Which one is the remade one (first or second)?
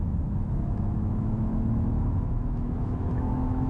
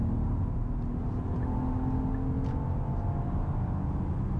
first